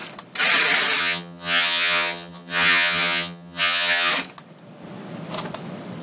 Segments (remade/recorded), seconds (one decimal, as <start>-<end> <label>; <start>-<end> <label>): 0.0-1.0 recorded; 1.0-4.1 remade; 4.1-6.0 recorded